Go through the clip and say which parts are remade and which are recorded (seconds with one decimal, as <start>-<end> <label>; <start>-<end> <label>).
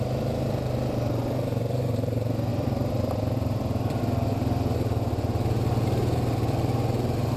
0.0-2.5 recorded; 2.5-4.0 remade; 4.0-7.4 recorded